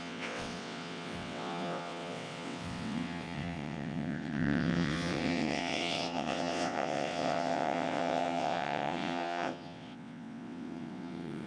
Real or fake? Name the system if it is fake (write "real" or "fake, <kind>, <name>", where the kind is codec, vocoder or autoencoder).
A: fake, vocoder, WaveNeXt